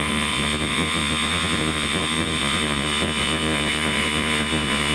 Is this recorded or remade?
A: remade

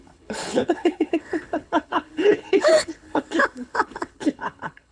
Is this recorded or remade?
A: remade